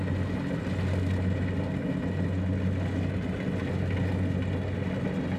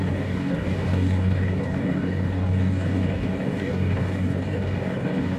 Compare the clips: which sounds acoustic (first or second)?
first